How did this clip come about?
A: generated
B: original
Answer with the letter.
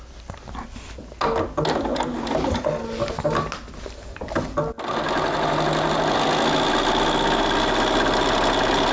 B